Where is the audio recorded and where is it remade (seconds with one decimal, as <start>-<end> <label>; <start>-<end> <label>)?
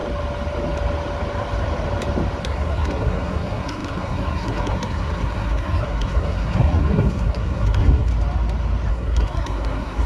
0.0-2.4 recorded; 2.4-8.1 remade; 8.1-8.9 recorded; 8.9-10.1 remade